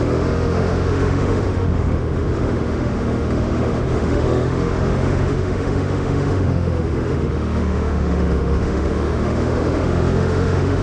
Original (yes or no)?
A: no